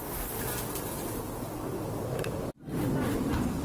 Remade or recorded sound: recorded